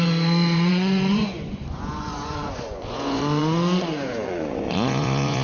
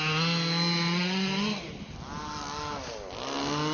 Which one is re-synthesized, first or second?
first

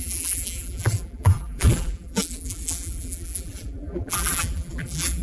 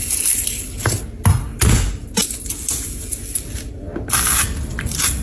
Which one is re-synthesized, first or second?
first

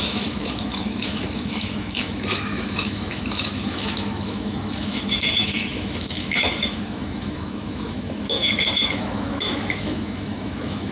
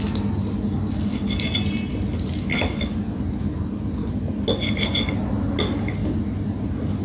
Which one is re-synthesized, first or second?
first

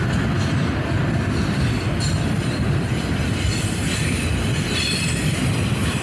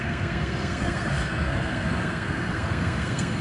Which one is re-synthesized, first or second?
second